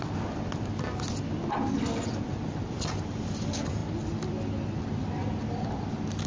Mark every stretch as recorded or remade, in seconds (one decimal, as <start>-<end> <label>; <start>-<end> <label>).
0.0-6.3 recorded